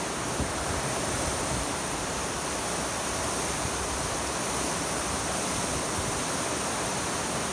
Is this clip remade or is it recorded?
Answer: remade